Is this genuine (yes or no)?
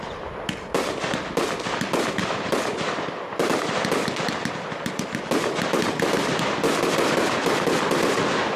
yes